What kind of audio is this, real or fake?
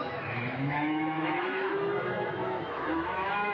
fake